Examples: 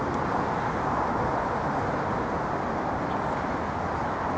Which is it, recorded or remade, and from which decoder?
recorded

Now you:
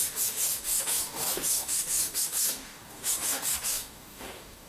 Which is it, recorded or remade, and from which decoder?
remade, codec, DAC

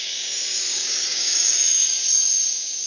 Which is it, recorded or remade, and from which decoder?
remade, codec, DAC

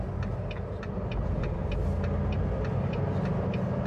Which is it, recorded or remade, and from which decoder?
recorded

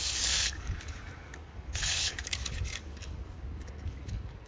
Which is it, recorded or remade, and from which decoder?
remade, codec, DAC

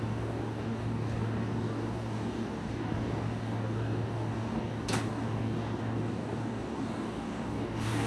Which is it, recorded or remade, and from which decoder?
remade, codec, DAC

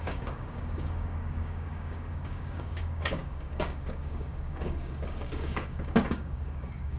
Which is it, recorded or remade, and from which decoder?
remade, codec, DAC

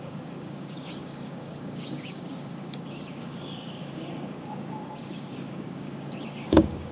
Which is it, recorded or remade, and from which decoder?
remade, codec, DAC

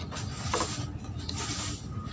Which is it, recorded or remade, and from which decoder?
recorded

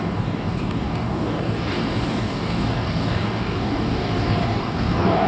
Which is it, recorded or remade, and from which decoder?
remade, codec, DAC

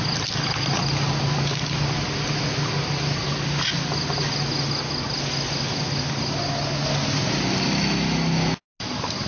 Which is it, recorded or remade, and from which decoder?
recorded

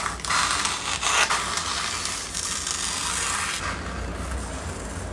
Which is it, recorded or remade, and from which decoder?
recorded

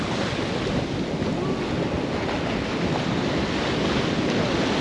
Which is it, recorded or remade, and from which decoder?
recorded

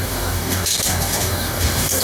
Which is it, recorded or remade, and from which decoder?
remade, codec, DAC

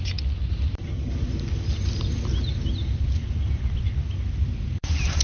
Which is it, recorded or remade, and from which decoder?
recorded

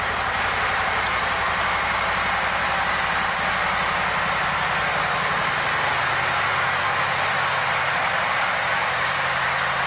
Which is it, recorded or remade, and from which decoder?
recorded